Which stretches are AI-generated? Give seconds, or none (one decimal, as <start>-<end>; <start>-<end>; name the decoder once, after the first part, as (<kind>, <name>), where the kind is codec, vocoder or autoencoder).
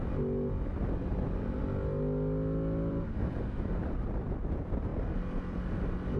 1.1-1.6 (vocoder, BigVGAN v2); 2.9-4.4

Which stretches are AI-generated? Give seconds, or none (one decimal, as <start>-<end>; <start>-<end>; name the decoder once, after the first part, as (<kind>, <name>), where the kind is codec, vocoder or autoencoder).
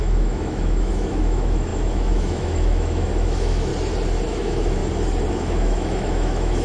0.0-3.7 (autoencoder, DAC-VAE); 4.3-4.8; 5.3-6.6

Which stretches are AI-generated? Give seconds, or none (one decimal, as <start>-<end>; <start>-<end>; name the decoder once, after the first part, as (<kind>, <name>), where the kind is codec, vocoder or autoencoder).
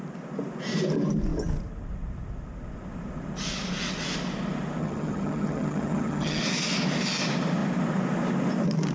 4.8-6.4 (vocoder, HiFi-GAN)